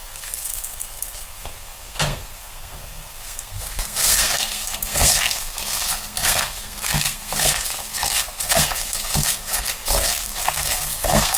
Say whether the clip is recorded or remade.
remade